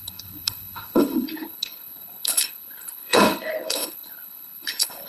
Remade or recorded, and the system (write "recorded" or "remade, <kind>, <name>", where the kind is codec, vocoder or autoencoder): remade, codec, HILCodec